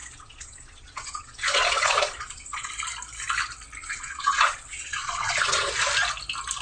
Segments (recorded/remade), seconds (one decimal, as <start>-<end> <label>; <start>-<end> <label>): 0.0-2.7 remade; 2.7-3.8 recorded; 3.8-5.7 remade; 5.7-6.6 recorded